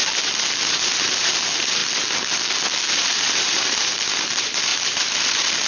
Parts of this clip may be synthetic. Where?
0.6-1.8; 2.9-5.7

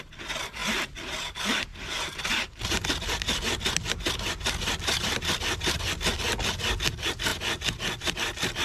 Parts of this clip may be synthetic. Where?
none

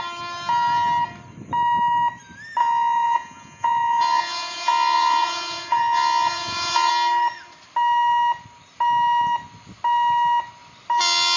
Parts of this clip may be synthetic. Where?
2.6-6.9

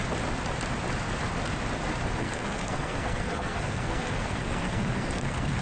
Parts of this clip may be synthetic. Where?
2.2-5.6

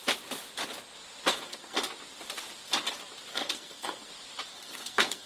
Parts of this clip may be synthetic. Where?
1.3-1.9; 3.3-4.1; 4.5-5.3